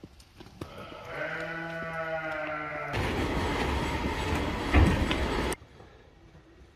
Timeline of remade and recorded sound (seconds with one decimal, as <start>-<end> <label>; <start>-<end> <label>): 0.0-5.2 recorded; 5.2-6.1 remade; 6.1-6.8 recorded